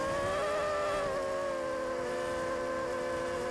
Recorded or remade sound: recorded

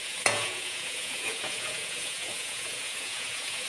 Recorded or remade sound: remade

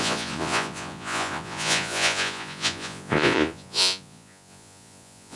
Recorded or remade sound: remade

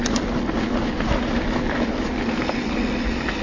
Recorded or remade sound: recorded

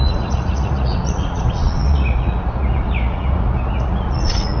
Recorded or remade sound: remade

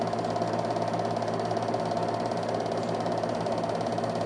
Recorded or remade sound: recorded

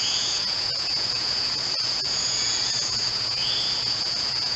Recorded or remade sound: remade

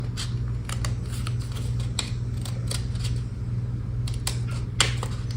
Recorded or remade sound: recorded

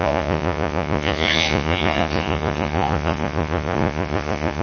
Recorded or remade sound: remade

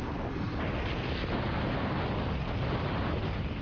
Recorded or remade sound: recorded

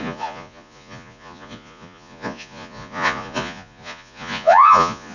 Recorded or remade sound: remade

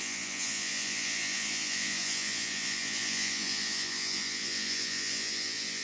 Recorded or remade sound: remade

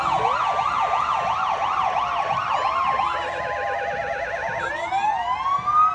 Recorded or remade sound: recorded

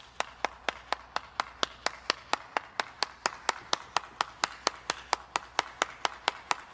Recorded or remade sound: recorded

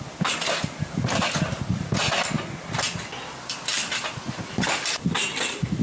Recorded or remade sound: recorded